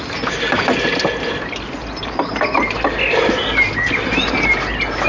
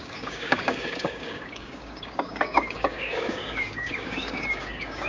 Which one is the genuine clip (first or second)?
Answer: first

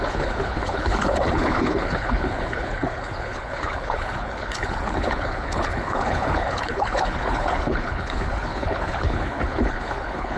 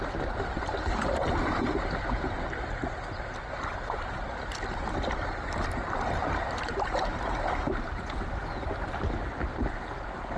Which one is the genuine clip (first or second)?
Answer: second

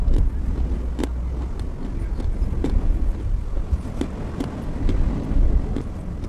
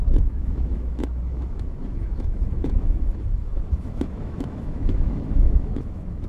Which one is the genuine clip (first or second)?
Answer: first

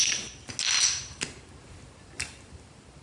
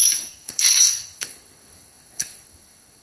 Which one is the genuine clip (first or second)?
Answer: first